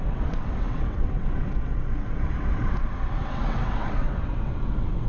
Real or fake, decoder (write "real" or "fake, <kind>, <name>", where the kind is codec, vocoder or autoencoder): fake, vocoder, WaveNeXt